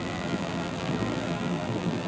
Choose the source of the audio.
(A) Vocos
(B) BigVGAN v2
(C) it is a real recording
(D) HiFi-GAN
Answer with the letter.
B